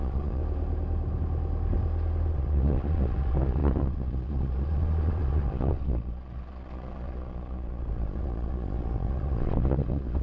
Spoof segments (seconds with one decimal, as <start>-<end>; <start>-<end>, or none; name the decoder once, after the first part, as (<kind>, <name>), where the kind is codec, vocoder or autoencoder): 0.0-0.4 (vocoder, Vocos); 2.3-10.2